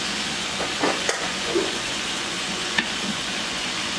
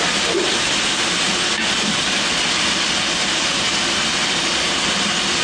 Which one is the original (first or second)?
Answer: second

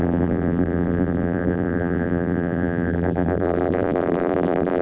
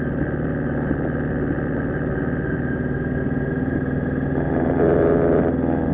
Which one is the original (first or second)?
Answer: second